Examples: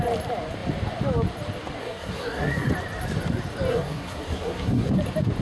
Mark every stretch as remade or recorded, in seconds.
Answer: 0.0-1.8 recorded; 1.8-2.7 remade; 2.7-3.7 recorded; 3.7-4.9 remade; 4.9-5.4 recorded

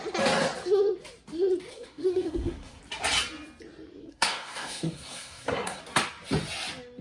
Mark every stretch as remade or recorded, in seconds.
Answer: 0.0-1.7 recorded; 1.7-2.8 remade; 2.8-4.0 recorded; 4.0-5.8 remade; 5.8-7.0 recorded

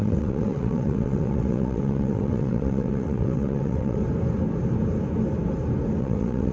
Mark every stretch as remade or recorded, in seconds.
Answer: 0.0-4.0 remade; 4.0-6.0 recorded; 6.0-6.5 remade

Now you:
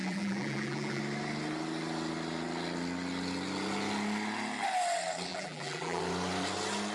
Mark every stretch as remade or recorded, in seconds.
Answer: 0.0-1.0 remade; 1.0-5.3 recorded; 5.3-6.0 remade; 6.0-6.9 recorded

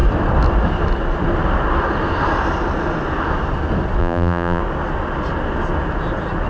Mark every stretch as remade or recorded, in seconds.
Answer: 0.0-4.0 recorded; 4.0-4.6 remade; 4.6-6.5 recorded

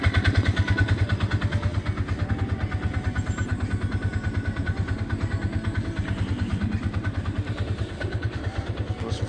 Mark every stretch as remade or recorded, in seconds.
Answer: 0.0-6.5 recorded; 6.5-8.6 remade; 8.6-9.3 recorded